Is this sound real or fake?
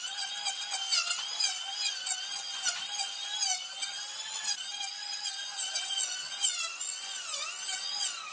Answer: fake